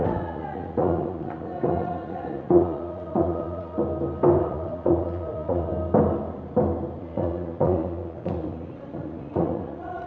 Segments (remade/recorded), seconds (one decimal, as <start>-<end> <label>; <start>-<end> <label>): 0.0-3.8 remade; 3.8-4.4 recorded; 4.4-5.7 remade; 5.7-7.0 recorded; 7.0-10.1 remade